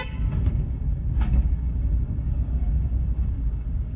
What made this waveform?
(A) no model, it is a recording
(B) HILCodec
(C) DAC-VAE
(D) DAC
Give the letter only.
D